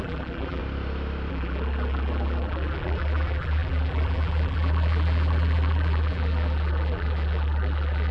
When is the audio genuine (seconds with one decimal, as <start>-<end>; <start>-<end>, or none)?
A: 0.6-1.3